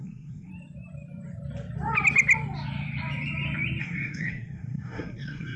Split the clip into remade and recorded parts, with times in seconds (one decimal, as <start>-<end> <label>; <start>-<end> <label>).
0.0-0.5 remade; 0.5-3.8 recorded; 3.8-5.6 remade